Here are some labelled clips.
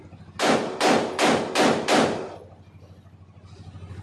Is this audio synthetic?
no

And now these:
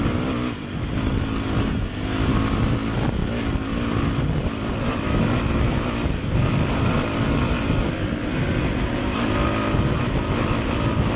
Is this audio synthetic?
no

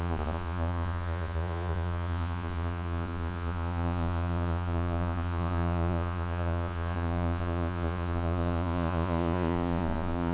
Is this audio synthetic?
yes